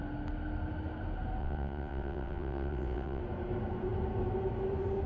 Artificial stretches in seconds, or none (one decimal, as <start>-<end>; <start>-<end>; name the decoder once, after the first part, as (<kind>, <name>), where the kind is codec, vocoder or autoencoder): 1.4-3.2 (vocoder, WaveNeXt)